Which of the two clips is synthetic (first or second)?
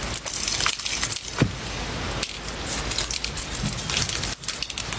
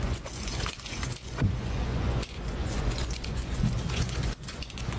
second